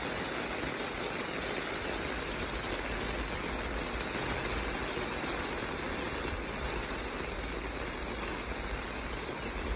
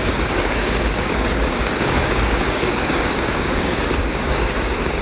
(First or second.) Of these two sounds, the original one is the first